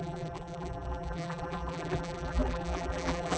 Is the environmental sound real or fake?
fake